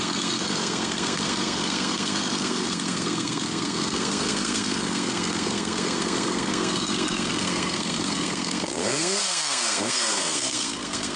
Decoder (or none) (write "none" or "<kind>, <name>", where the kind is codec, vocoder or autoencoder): codec, SNAC